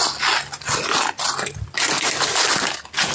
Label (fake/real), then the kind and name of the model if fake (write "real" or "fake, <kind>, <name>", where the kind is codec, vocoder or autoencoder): real